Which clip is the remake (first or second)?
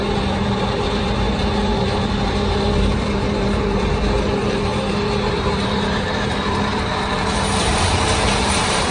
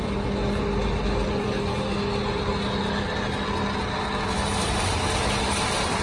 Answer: first